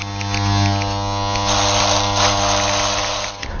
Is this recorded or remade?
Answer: recorded